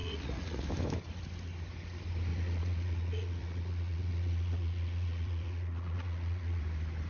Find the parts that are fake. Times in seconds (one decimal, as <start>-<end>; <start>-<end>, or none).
0.0-0.7; 2.3-6.6